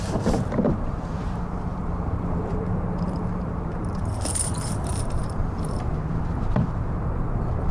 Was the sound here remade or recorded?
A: remade